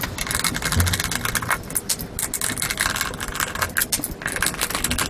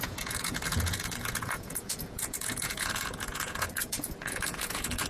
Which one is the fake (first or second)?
second